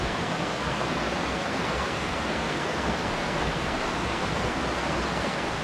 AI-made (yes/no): yes